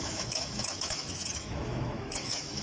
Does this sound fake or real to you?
fake